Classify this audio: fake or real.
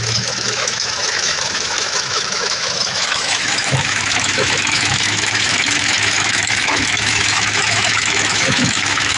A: fake